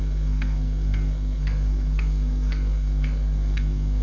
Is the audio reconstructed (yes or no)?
yes